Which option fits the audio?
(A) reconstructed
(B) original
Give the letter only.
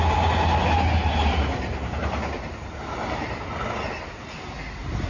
B